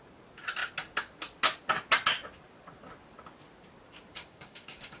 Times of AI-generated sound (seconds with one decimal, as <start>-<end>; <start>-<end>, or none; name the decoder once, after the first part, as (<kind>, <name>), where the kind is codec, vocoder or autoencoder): 4.1-5.0 (codec, DAC)